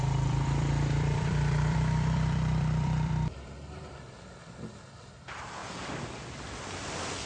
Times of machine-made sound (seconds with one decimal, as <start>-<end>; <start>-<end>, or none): 0.0-5.6